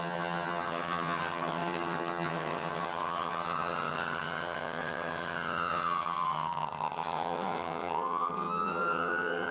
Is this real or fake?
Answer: fake